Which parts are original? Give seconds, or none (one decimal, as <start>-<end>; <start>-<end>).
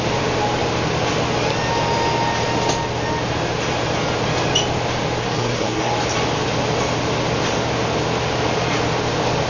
0.0-5.2; 5.9-9.5